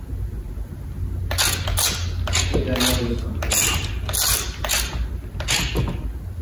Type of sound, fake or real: real